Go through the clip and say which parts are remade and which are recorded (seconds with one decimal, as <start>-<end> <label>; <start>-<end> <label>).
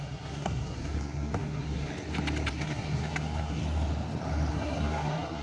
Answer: 0.0-1.9 remade; 1.9-2.5 recorded; 2.5-3.6 remade; 3.6-4.5 recorded; 4.5-5.4 remade